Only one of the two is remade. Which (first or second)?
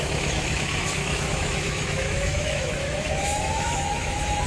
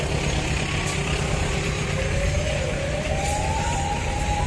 first